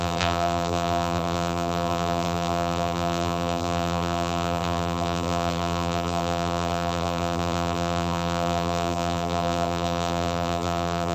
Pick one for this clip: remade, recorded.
remade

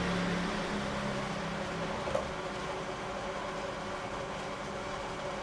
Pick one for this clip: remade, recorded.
recorded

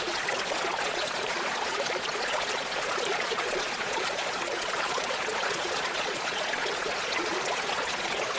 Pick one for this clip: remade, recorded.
remade